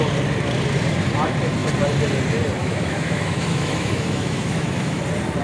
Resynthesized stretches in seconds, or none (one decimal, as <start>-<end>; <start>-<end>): 2.6-5.0